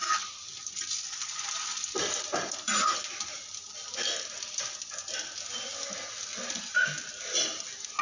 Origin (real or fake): real